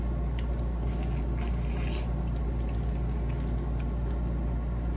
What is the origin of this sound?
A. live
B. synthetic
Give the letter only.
A